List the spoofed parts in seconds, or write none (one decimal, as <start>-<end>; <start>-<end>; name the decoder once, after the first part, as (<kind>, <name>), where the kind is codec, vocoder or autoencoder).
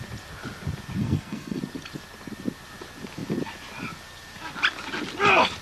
1.0-1.6 (codec, SNAC)